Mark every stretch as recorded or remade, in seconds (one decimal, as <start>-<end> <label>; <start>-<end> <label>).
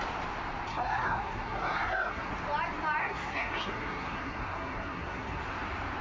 0.0-0.7 recorded; 0.7-2.3 remade; 2.3-3.0 recorded; 3.0-5.4 remade; 5.4-6.0 recorded